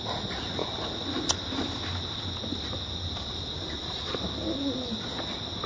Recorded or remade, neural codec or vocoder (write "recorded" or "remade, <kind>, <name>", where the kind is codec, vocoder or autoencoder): recorded